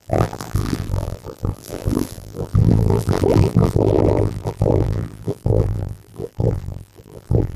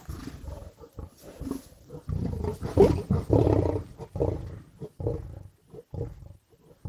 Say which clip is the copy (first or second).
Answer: first